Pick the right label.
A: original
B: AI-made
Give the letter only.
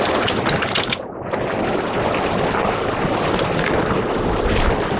A